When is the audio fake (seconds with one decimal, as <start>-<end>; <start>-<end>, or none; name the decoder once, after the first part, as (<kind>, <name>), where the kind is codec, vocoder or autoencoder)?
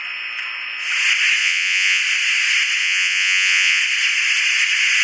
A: 1.4-2.0 (vocoder, Vocos); 2.8-3.8